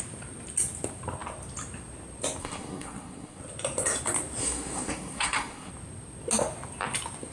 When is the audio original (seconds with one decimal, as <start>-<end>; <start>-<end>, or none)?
0.0-2.4; 3.4-4.4; 5.7-7.3